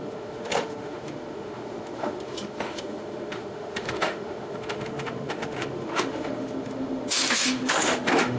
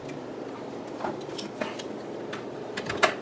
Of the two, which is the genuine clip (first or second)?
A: second